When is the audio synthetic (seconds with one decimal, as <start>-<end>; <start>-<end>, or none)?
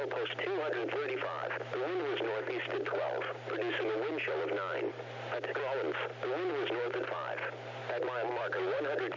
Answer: 7.8-9.2